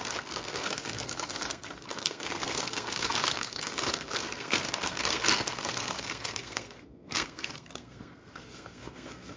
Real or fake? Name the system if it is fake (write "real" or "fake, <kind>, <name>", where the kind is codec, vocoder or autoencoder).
fake, codec, SNAC